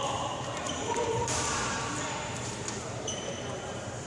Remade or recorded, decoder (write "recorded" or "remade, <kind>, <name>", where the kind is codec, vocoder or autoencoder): remade, vocoder, BigVGAN v2